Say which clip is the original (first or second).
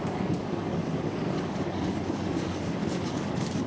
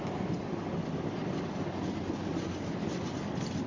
second